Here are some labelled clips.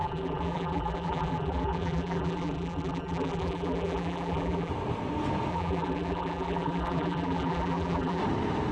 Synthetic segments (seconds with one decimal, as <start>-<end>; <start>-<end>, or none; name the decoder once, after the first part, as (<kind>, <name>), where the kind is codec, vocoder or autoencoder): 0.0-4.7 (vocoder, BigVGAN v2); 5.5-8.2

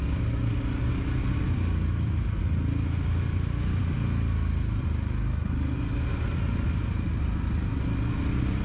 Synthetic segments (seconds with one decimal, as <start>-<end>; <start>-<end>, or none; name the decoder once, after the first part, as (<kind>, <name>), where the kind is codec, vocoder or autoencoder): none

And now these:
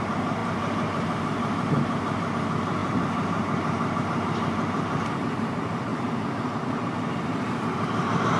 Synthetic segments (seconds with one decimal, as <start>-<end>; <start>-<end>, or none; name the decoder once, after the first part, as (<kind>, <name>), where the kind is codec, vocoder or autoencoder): 0.0-5.9 (vocoder, BigVGAN v2); 6.8-8.4